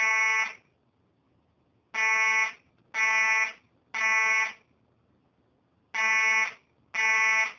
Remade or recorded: recorded